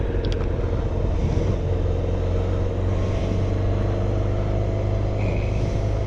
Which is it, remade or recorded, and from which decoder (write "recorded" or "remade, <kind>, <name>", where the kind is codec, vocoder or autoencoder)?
recorded